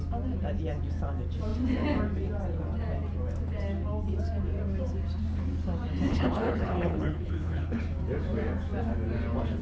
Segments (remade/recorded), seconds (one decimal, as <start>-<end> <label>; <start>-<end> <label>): 0.0-6.1 recorded; 6.1-7.8 remade; 7.8-9.6 recorded